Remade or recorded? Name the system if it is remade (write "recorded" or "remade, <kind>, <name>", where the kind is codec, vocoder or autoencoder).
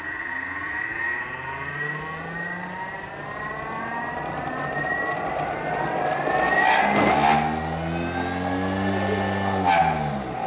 recorded